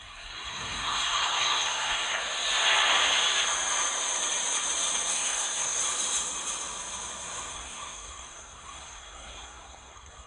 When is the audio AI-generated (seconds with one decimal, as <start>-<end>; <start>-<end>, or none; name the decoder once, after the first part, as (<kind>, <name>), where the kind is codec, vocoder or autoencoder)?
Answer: 0.0-2.2 (codec, SNAC); 5.1-5.8; 7.5-10.3